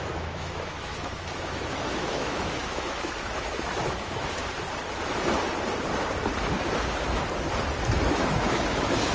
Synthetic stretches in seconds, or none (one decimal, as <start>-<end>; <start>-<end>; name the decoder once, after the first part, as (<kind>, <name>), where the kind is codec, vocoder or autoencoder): 0.0-4.4 (autoencoder, DAC-VAE); 8.0-9.1